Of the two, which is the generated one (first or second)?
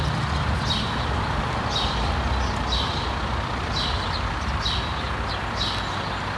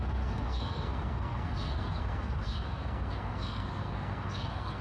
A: second